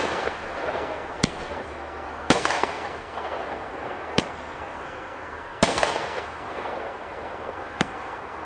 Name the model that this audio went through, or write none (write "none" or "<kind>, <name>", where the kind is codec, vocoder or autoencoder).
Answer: codec, SNAC